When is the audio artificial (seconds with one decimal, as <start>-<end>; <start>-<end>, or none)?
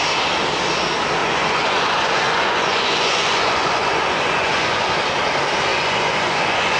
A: 1.2-4.9; 5.7-6.8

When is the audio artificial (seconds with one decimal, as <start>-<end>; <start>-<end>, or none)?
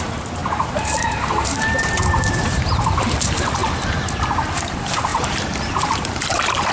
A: 0.0-3.6; 4.6-6.7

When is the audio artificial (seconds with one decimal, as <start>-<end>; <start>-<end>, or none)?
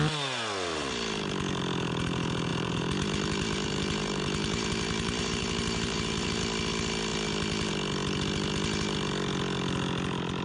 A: 2.5-6.4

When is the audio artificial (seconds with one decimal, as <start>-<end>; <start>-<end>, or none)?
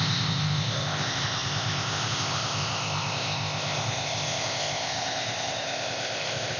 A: 0.0-6.6